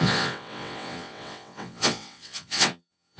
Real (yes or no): no